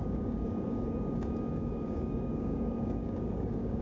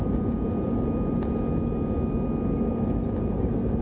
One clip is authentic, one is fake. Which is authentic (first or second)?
second